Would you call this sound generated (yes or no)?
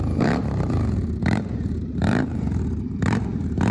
yes